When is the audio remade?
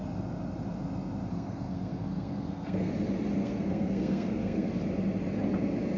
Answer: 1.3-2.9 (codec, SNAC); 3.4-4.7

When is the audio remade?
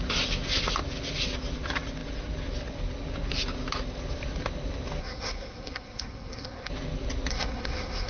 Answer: 5.0-6.7 (codec, SNAC); 7.3-8.1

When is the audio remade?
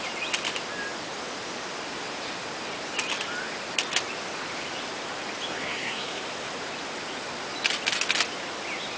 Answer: 5.5-6.2 (codec, SNAC)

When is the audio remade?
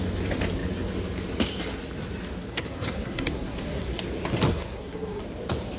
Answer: 2.5-4.0 (codec, SNAC); 4.5-5.2